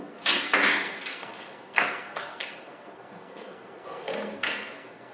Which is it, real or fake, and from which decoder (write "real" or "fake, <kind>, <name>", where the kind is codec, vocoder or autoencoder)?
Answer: fake, codec, SNAC